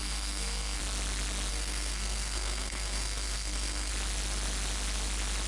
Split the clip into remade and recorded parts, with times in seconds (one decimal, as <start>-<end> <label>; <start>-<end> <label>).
0.0-0.8 remade; 0.8-1.5 recorded; 1.5-3.9 remade; 3.9-5.5 recorded